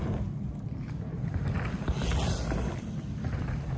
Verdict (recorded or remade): recorded